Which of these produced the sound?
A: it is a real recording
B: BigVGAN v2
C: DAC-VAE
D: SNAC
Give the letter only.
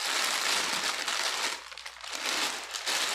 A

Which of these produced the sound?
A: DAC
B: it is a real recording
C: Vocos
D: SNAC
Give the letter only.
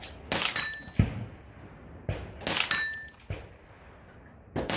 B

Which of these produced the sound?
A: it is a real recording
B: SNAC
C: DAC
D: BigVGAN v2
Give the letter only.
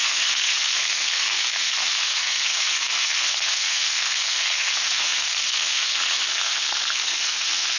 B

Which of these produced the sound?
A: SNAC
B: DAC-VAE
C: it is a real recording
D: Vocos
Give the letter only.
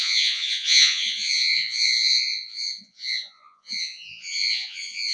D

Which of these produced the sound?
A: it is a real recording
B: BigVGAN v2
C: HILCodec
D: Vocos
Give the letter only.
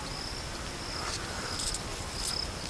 A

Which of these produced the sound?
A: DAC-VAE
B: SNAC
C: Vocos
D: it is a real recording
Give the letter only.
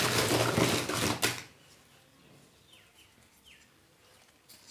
D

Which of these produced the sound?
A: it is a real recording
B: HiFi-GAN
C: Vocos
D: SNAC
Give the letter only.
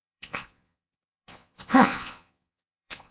C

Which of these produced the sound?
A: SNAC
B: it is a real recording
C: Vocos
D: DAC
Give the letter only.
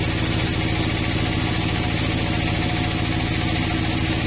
B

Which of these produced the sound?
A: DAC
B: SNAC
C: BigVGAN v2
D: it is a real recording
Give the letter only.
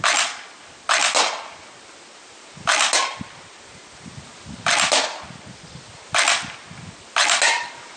D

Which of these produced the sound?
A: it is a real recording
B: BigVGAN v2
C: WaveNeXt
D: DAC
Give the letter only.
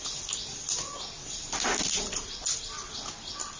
A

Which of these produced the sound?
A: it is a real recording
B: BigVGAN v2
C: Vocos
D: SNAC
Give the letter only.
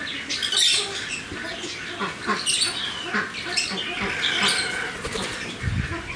A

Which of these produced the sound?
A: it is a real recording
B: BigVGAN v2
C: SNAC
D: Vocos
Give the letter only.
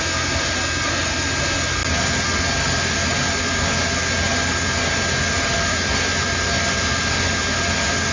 A